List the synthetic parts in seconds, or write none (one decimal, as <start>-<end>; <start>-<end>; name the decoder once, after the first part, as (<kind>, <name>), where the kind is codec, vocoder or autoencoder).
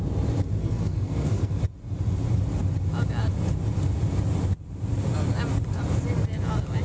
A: 0.6-1.6 (codec, SNAC)